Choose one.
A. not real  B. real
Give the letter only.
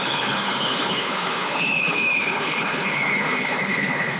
A